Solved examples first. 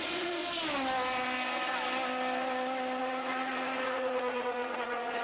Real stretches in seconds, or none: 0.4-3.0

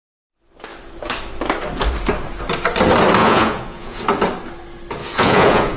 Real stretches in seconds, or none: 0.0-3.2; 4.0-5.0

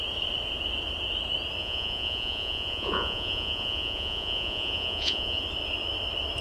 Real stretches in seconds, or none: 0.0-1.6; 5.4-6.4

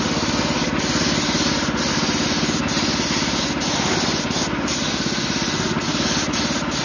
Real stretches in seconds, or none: 0.0-6.8

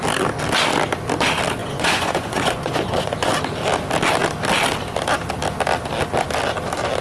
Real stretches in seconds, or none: 0.0-1.6; 3.3-7.0

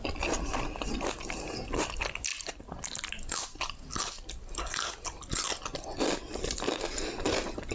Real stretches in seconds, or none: 0.0-7.7

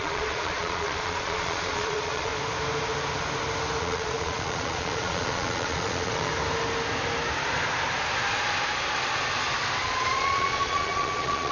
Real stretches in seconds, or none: 2.3-3.8; 6.3-9.8